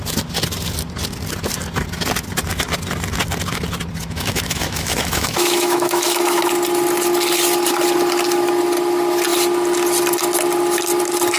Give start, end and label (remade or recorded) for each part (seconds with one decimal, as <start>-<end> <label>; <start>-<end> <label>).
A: 0.0-4.0 recorded; 4.0-6.4 remade; 6.4-11.4 recorded